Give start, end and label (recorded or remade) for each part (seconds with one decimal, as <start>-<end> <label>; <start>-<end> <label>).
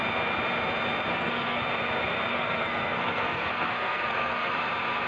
0.0-1.1 recorded; 1.1-1.6 remade; 1.6-2.3 recorded; 2.3-4.5 remade; 4.5-5.1 recorded